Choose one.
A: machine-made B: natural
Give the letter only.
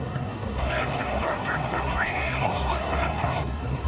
A